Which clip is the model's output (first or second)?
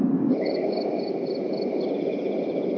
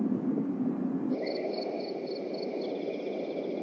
first